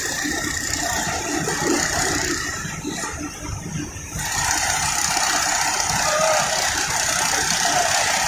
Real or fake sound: real